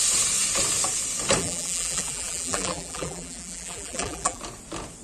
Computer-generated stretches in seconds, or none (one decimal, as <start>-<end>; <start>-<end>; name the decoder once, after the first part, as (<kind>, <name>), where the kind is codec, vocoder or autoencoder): 1.4-4.4 (vocoder, BigVGAN v2)